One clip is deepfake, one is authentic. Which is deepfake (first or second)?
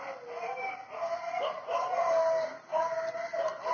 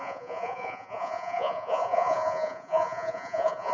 second